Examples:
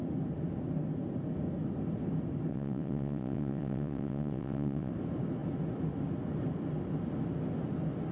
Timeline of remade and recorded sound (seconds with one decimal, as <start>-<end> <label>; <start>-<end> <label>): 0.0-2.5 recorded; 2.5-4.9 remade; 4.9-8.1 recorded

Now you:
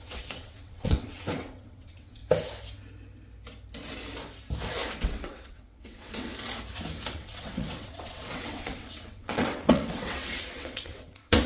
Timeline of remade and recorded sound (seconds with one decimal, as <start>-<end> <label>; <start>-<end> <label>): 0.0-2.2 remade; 2.2-5.0 recorded; 5.0-6.3 remade; 6.3-7.1 recorded; 7.1-11.5 remade

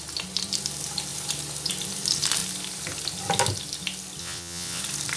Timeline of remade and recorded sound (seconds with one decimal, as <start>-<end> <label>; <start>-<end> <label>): 0.0-4.2 recorded; 4.2-4.8 remade; 4.8-5.2 recorded